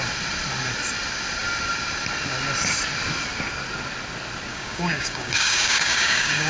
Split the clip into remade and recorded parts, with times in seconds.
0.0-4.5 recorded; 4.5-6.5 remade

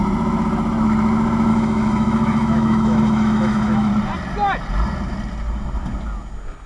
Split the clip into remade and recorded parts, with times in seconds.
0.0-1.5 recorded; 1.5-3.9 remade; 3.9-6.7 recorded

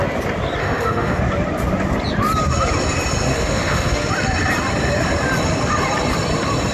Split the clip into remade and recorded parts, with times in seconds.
0.0-0.6 recorded; 0.6-1.2 remade; 1.2-3.3 recorded; 3.3-4.1 remade; 4.1-6.7 recorded

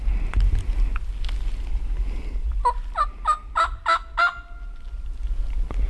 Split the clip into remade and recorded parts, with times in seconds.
0.0-5.9 recorded

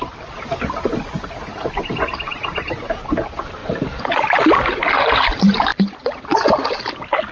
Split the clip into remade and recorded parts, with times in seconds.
0.0-7.3 recorded

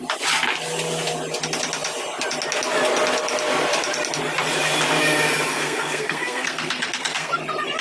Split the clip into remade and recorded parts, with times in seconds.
0.0-5.5 recorded; 5.5-7.3 remade; 7.3-7.8 recorded

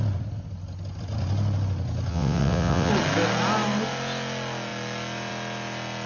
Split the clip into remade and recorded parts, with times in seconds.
0.0-2.1 recorded; 2.1-2.9 remade; 2.9-6.1 recorded

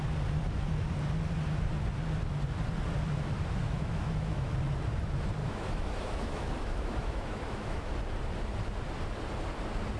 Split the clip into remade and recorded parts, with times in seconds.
0.0-3.6 recorded; 3.6-4.5 remade; 4.5-5.4 recorded; 5.4-7.9 remade; 7.9-10.0 recorded